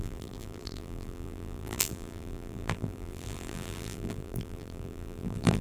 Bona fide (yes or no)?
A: no